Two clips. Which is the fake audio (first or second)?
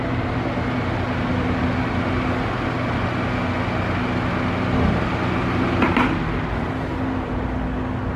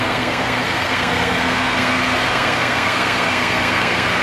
second